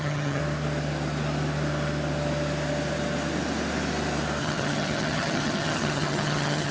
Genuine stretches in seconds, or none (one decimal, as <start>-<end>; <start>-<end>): 0.4-4.4